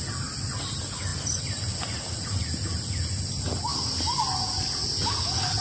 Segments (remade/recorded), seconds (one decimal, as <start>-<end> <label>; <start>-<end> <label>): 0.0-5.6 recorded